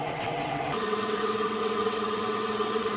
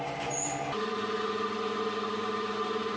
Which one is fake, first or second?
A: first